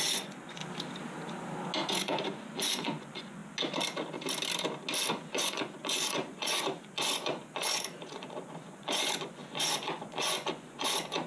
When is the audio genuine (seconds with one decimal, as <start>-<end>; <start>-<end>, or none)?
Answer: 0.6-1.9; 3.4-5.1